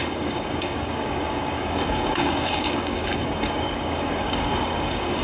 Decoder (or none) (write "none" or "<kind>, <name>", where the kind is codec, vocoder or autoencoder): codec, DAC